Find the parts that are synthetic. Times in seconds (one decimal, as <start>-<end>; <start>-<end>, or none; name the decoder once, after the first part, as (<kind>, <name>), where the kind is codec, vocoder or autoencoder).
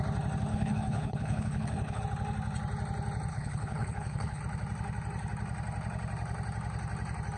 0.5-2.0 (codec, HILCodec); 3.3-4.4